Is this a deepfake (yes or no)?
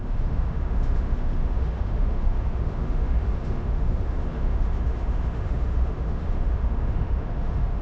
yes